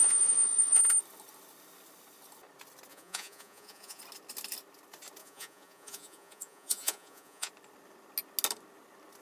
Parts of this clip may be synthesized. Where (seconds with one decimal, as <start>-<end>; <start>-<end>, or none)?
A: 0.0-0.8; 2.9-4.0; 5.2-7.5